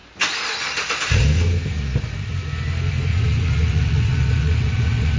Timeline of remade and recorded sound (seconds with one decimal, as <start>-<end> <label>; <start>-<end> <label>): 0.0-3.1 recorded; 3.1-5.2 remade